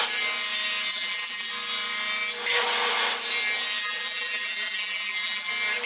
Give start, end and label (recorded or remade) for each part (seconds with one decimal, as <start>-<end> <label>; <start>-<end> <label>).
0.0-0.9 recorded; 0.9-1.5 remade; 1.5-3.8 recorded; 3.8-5.5 remade; 5.5-5.9 recorded